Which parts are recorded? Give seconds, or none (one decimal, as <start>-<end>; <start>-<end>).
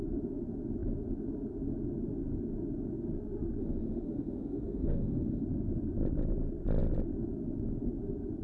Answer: 0.0-3.6; 5.4-8.4